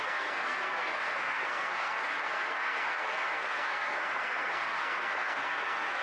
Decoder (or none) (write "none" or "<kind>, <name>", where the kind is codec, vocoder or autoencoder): codec, SNAC